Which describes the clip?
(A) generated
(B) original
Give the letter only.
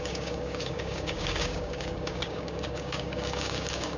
A